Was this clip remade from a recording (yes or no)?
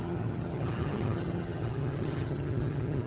yes